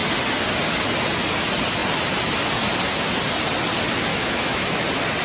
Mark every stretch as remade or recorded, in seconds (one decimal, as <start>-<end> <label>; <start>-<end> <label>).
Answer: 0.0-4.1 recorded; 4.1-4.8 remade; 4.8-5.2 recorded